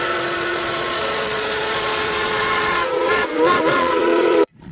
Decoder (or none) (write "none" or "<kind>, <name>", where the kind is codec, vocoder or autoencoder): vocoder, Vocos